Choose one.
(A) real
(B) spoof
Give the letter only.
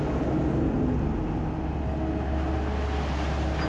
A